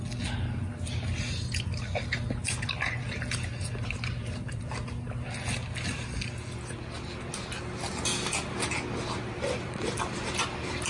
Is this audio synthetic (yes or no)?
no